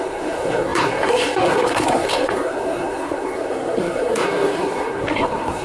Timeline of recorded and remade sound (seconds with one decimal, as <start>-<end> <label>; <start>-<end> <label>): 0.0-5.6 remade